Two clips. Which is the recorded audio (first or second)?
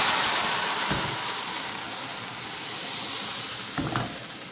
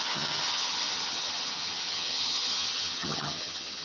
first